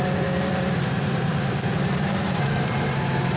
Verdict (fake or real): fake